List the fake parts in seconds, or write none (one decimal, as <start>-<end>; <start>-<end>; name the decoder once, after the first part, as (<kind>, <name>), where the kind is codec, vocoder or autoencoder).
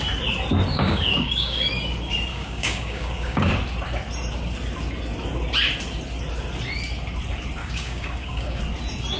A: 0.7-1.6 (codec, DAC); 2.3-3.5; 7.6-8.6